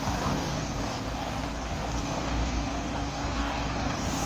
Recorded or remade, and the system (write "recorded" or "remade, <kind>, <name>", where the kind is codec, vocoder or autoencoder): remade, codec, DAC